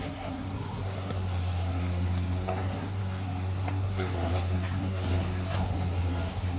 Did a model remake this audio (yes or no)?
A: yes